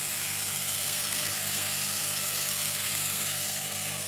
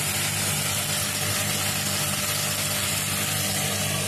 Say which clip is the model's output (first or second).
first